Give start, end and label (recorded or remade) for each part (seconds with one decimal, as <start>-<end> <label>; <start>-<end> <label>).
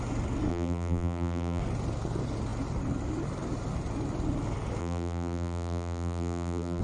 0.0-0.5 recorded; 0.5-1.6 remade; 1.6-4.8 recorded; 4.8-6.8 remade